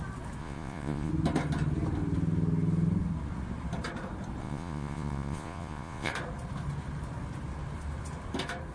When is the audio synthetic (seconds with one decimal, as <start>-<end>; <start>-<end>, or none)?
0.4-1.1; 4.4-6.1